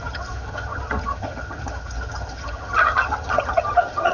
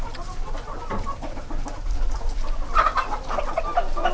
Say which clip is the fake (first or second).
first